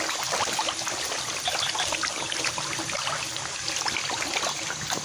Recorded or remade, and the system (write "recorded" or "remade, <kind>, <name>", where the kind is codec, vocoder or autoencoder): recorded